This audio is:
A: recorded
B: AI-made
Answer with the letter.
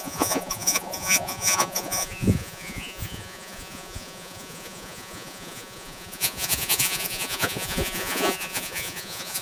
B